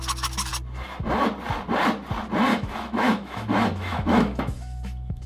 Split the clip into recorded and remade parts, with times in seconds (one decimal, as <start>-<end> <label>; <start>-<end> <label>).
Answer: 0.0-2.5 recorded; 2.5-5.3 remade